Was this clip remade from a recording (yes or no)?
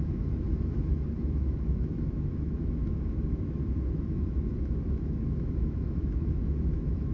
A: yes